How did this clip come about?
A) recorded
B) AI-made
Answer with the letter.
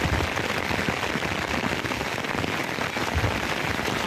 A